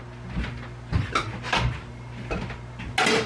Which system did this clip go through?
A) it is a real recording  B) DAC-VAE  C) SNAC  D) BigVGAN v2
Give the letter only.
A